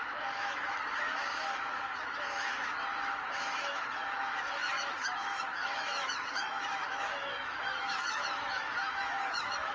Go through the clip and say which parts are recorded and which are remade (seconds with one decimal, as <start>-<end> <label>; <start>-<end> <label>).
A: 0.0-9.7 remade